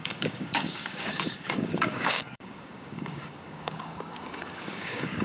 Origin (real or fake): fake